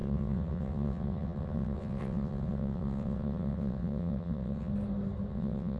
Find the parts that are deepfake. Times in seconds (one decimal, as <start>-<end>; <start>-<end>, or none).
0.0-4.7; 5.3-5.8